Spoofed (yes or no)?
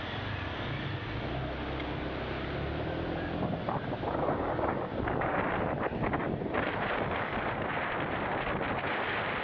no